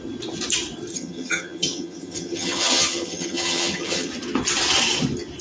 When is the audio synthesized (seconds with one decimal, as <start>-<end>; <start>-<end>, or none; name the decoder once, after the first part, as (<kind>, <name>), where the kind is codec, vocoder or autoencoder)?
0.9-4.1 (vocoder, HiFi-GAN)